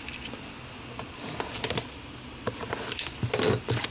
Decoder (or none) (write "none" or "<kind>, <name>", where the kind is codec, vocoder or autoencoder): none